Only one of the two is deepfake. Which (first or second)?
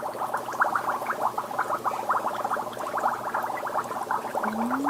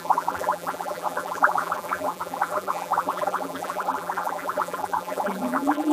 second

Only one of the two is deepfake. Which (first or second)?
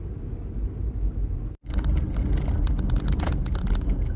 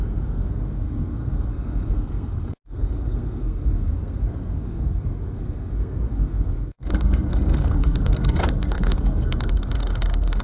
second